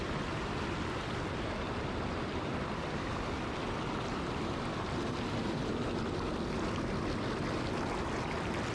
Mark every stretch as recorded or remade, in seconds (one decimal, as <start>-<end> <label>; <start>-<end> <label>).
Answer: 0.0-8.7 recorded